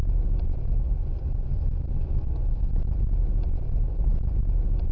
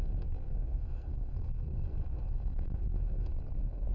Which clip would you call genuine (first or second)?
first